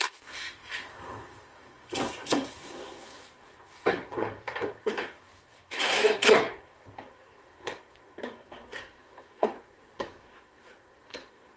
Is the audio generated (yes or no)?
yes